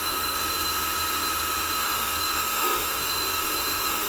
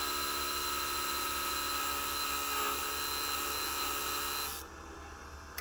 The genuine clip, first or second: second